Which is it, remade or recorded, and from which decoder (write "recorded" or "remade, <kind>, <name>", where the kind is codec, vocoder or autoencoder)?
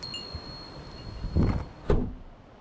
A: recorded